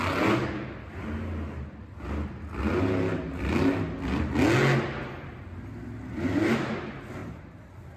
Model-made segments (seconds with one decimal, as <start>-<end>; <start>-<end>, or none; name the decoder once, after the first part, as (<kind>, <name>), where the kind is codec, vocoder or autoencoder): 7.2-8.0 (vocoder, BigVGAN v2)